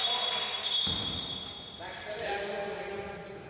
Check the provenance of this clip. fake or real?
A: real